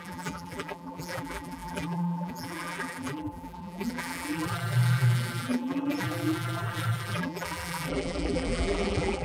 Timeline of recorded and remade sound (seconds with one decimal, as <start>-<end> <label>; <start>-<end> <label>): 0.0-9.2 remade